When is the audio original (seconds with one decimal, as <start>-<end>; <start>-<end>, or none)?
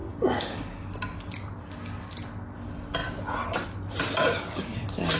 0.9-5.2